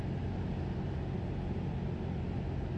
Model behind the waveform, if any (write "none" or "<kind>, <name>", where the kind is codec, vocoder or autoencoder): none